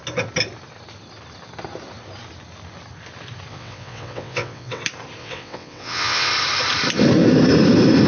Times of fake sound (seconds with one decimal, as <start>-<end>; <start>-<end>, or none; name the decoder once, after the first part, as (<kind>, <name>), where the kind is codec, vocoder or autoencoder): 3.5-4.8 (vocoder, WaveNeXt); 5.2-6.3